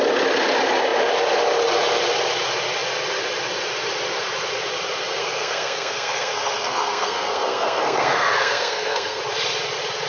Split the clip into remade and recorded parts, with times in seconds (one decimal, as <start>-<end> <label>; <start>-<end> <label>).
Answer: 0.0-5.2 recorded; 5.2-9.2 remade; 9.2-10.1 recorded